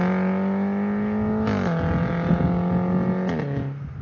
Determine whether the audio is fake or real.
real